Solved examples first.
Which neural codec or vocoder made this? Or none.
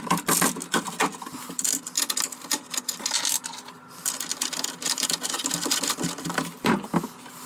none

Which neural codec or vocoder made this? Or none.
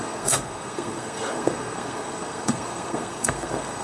codec, SNAC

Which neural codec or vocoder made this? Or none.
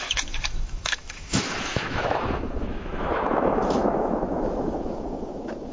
autoencoder, DAC-VAE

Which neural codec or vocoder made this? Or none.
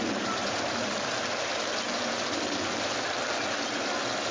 none